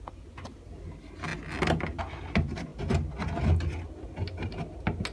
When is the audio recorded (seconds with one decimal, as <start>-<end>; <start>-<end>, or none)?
0.0-5.1